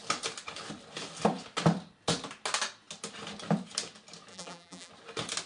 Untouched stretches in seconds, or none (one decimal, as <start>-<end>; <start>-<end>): 0.0-4.3; 4.9-5.5